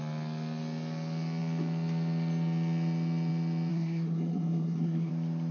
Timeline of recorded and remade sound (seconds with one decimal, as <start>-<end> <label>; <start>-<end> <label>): 0.0-3.7 recorded; 3.7-5.1 remade; 5.1-5.5 recorded